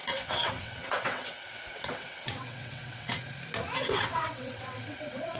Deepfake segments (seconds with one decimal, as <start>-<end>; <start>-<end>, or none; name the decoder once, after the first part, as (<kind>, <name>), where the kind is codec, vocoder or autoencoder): 0.0-3.2 (vocoder, WaveNeXt); 3.8-5.4

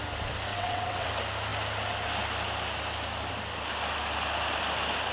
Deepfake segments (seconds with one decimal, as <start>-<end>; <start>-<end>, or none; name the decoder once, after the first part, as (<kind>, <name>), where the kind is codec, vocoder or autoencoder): 0.5-1.1 (vocoder, WaveNeXt)

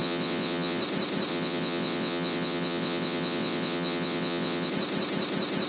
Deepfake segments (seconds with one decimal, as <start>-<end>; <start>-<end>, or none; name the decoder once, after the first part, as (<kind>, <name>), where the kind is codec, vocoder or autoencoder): 0.0-0.8 (vocoder, WaveNeXt); 1.3-4.7

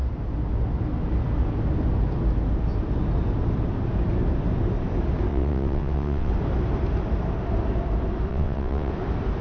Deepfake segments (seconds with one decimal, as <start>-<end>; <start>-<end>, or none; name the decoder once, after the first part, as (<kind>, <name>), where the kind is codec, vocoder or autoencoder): 5.3-6.3 (vocoder, WaveNeXt); 8.3-8.9

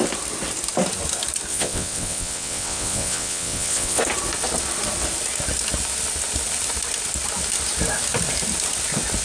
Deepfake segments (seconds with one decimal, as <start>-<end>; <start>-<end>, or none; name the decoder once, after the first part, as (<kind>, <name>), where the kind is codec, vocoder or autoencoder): 1.5-4.0 (vocoder, WaveNeXt)

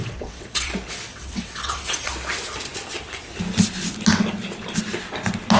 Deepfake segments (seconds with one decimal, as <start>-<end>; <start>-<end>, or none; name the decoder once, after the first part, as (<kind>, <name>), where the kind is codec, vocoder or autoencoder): 0.0-0.7 (vocoder, WaveNeXt); 1.1-2.1